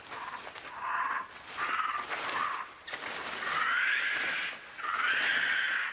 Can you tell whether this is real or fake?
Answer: real